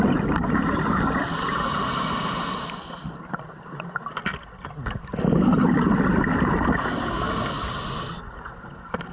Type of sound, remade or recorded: recorded